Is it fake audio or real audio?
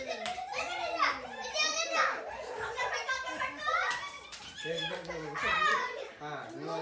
real